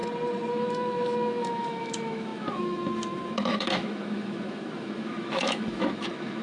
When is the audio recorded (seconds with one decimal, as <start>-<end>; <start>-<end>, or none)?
0.0-0.5